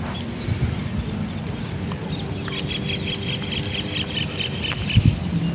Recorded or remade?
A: recorded